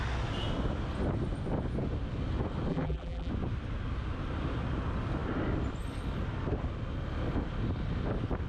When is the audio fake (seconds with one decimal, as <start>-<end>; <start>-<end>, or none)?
2.7-3.3